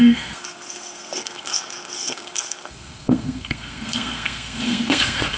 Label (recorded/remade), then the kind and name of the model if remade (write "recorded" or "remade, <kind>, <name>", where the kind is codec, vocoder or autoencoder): remade, codec, SNAC